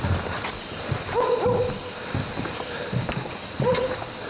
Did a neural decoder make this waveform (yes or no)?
no